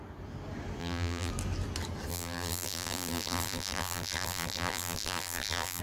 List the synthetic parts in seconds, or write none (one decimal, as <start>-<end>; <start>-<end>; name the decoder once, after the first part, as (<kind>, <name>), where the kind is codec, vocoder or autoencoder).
0.8-1.3 (vocoder, BigVGAN v2); 2.1-5.8